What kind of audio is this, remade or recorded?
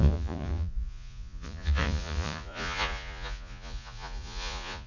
remade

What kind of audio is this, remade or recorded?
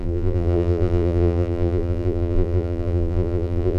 remade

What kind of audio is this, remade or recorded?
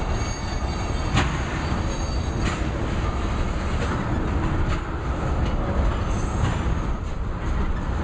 recorded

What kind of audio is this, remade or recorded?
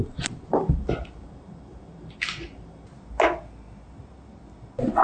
recorded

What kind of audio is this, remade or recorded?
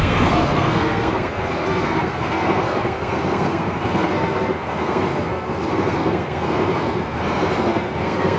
remade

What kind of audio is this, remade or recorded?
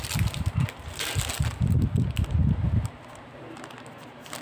recorded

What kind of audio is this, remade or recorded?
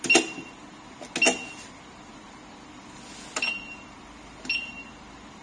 recorded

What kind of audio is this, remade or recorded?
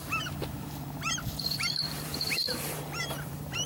remade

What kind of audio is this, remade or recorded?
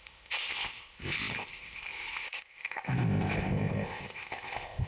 remade